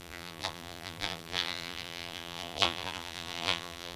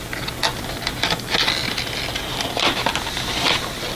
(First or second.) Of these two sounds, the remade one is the first